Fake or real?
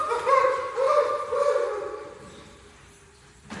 real